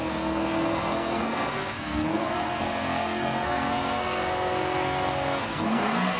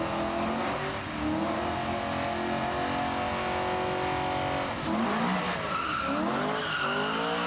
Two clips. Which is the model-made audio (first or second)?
first